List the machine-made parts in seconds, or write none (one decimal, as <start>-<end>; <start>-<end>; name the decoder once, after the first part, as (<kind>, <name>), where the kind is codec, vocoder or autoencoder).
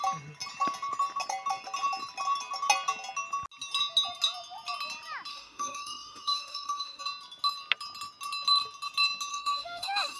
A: 5.3-7.0 (autoencoder, DAC-VAE); 9.3-10.2